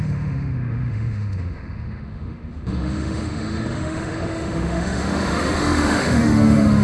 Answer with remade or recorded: remade